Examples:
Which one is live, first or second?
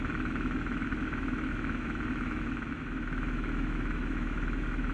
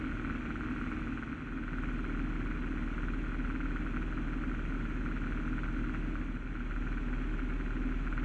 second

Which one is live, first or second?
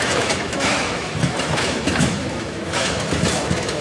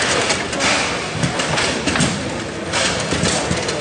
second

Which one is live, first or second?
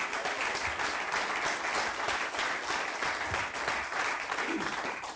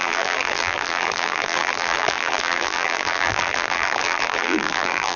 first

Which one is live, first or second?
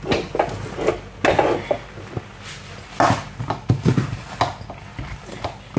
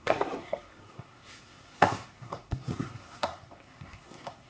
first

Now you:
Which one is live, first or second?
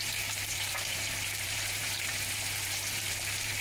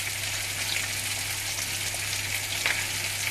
second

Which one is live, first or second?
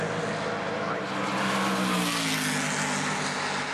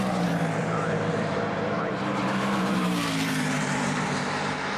first